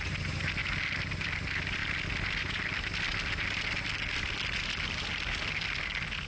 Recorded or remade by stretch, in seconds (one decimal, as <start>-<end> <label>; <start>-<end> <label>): 0.0-1.8 recorded; 1.8-2.7 remade; 2.7-6.3 recorded